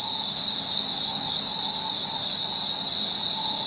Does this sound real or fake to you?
real